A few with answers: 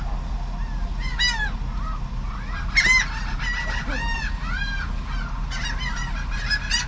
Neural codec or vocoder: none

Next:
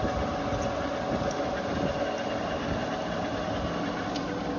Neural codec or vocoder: none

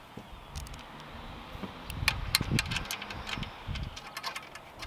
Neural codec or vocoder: none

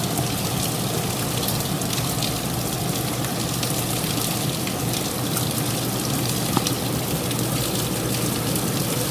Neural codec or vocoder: none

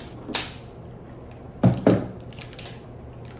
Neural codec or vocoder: none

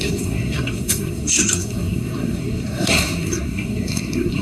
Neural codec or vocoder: codec, SNAC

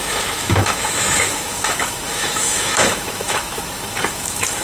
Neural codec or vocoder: autoencoder, DAC-VAE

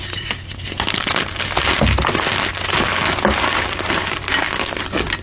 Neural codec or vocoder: none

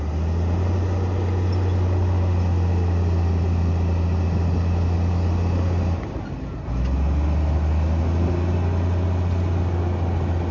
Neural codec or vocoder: none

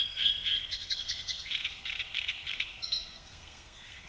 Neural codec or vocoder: codec, SNAC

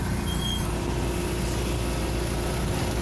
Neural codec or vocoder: none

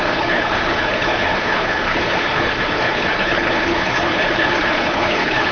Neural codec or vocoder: codec, HILCodec